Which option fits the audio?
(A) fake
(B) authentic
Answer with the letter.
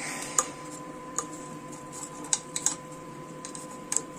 A